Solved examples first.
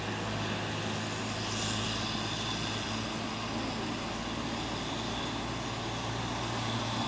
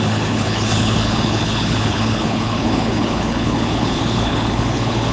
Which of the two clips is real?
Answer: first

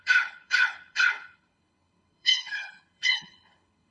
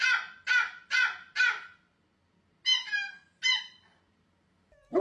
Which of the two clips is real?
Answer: second